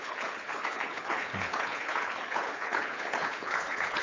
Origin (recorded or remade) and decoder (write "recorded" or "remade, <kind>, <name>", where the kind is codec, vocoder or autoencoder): remade, codec, HILCodec